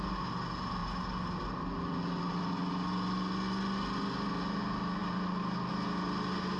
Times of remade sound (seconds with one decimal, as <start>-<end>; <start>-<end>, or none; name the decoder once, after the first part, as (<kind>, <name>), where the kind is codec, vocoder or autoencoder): none